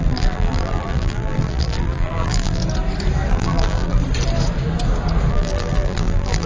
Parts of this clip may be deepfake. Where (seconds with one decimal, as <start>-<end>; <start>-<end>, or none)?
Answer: 0.0-2.6; 3.3-4.0; 5.3-6.5